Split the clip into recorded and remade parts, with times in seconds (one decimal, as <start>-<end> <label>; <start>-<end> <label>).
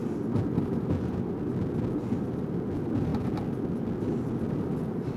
0.0-5.2 recorded